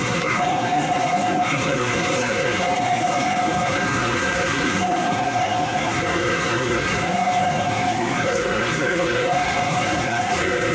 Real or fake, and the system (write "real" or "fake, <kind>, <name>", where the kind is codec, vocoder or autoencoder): fake, codec, SNAC